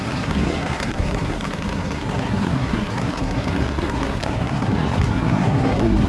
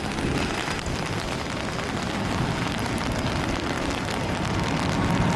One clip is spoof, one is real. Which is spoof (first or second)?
first